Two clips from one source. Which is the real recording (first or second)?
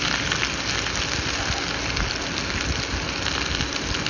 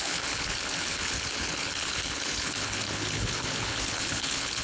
first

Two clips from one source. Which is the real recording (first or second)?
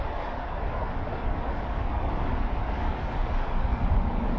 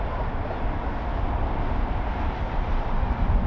second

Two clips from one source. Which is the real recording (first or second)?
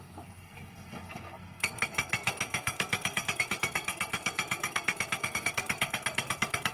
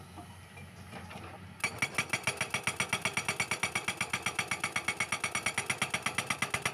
second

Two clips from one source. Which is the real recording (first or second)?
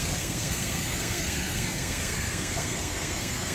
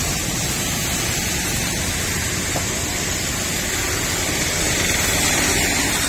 second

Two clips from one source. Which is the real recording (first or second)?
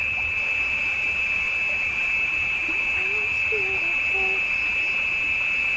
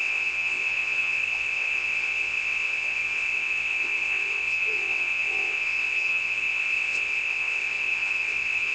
first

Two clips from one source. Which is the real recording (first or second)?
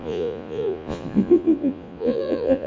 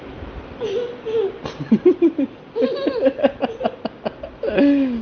second